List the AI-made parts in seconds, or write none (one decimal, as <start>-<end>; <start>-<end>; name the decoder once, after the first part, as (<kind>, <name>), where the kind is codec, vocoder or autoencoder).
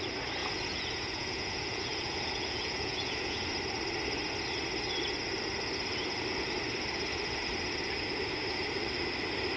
0.4-3.5 (vocoder, Vocos)